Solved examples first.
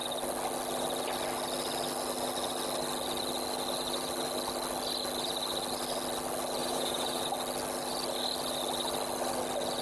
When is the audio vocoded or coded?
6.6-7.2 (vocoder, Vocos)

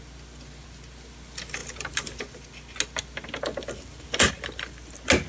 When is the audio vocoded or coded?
none

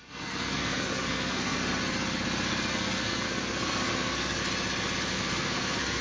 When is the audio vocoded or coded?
0.0-1.6 (codec, SNAC); 2.7-4.4; 5.1-6.0

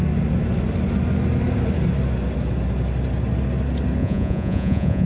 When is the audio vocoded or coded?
4.0-5.1 (vocoder, Vocos)

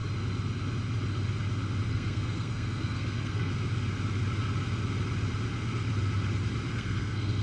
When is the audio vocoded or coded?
1.9-3.5 (codec, SNAC); 6.7-7.4

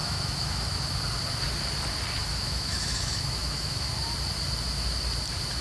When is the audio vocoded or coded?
0.0-0.9 (autoencoder, DAC-VAE); 2.2-3.9

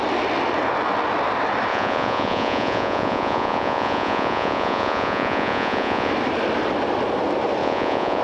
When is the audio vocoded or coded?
1.7-6.1 (vocoder, Vocos); 7.6-8.2